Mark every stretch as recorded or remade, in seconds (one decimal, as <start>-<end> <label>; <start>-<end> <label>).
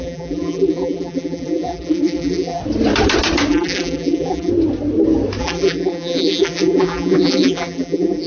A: 0.0-2.6 remade; 2.6-3.5 recorded; 3.5-4.5 remade; 4.5-5.4 recorded; 5.4-8.3 remade